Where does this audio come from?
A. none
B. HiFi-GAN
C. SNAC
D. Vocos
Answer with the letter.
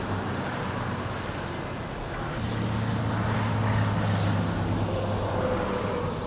A